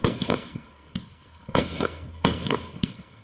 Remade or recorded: remade